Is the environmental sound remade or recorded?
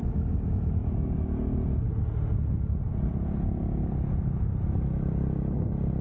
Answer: recorded